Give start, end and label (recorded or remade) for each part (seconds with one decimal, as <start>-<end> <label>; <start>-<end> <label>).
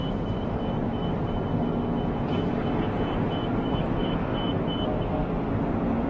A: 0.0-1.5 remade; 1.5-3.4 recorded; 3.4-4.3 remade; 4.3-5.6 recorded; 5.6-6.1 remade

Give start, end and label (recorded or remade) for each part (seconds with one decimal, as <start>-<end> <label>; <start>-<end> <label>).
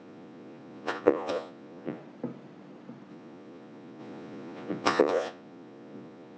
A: 0.0-2.0 remade; 2.0-3.1 recorded; 3.1-6.4 remade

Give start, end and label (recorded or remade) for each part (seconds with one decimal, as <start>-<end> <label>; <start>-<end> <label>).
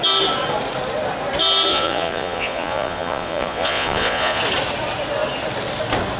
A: 0.0-1.7 recorded; 1.7-4.4 remade; 4.4-6.2 recorded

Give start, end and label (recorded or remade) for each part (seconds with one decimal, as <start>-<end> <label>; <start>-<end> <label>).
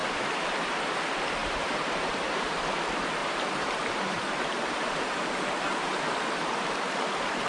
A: 0.0-0.7 remade; 0.7-1.4 recorded; 1.4-2.8 remade; 2.8-3.2 recorded; 3.2-5.5 remade; 5.5-7.5 recorded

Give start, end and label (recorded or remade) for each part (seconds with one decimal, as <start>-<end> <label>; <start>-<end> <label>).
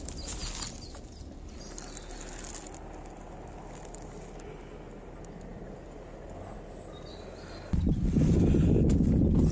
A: 0.0-9.5 recorded